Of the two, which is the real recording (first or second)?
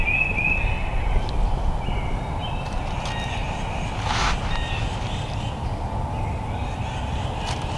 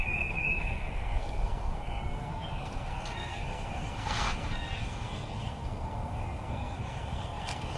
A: first